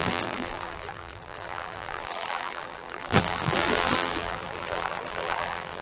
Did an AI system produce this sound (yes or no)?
yes